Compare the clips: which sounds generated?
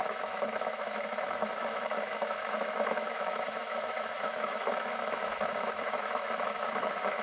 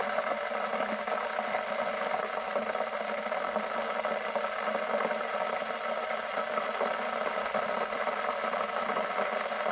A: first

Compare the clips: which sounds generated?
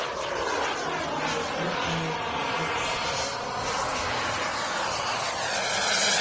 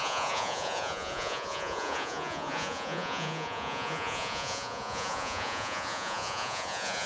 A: second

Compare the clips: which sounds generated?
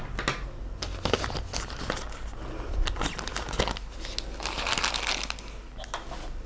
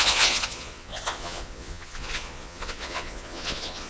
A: second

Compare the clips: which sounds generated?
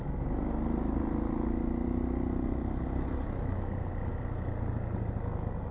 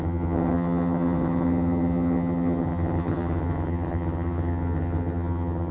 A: second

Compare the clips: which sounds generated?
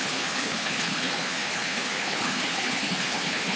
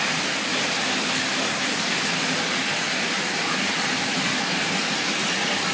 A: first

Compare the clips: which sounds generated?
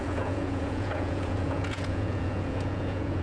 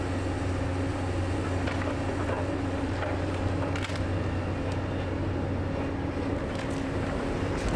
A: first